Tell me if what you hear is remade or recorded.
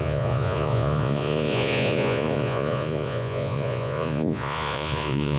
remade